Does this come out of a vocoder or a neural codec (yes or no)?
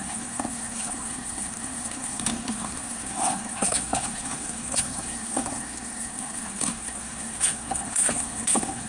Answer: yes